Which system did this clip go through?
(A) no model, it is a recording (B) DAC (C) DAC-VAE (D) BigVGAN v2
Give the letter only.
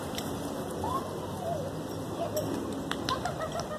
A